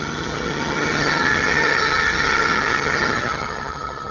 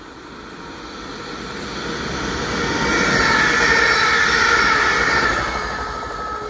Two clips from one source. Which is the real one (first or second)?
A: second